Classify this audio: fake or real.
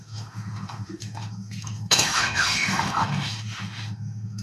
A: fake